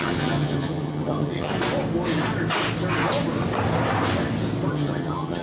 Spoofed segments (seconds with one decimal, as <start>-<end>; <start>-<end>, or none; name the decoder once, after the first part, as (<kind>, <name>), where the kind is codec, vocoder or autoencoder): 0.0-1.5 (vocoder, HiFi-GAN); 4.7-5.4